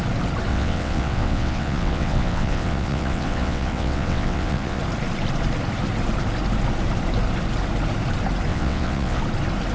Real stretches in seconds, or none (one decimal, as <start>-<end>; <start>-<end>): 0.0-0.5; 4.8-8.5; 9.2-9.7